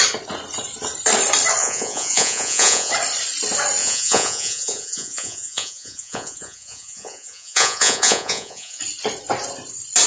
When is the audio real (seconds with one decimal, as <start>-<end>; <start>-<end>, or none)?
0.0-1.6; 2.9-3.8; 8.8-10.1